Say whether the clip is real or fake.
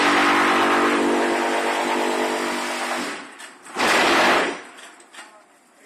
real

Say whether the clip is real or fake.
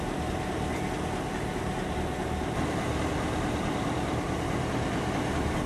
fake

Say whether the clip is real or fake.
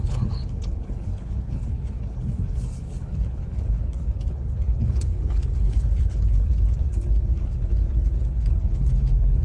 fake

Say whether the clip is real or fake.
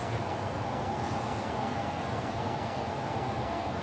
fake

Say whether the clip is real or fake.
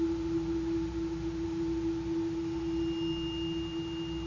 real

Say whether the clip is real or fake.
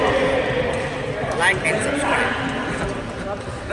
real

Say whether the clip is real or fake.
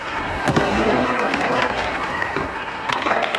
fake